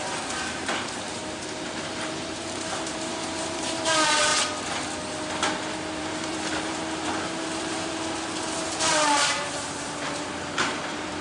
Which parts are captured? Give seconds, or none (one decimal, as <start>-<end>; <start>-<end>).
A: 1.2-1.8; 4.3-6.0